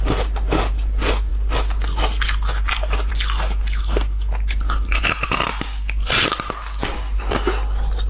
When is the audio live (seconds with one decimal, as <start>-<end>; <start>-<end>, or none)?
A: 0.0-3.8; 4.3-8.1